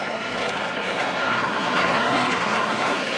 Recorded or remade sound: remade